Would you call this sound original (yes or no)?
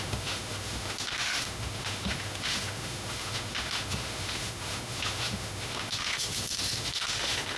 no